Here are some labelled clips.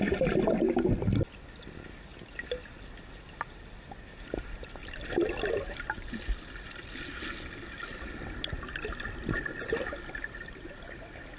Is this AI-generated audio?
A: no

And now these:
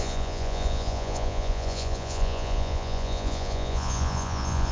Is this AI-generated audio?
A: yes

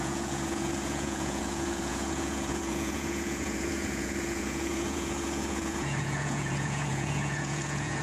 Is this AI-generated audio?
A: yes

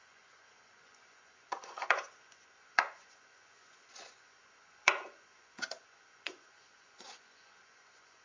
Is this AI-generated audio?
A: yes